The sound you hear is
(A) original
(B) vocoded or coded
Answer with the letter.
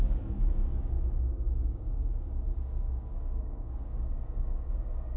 B